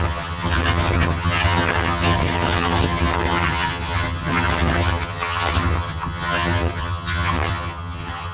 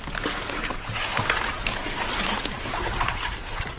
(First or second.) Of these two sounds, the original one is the second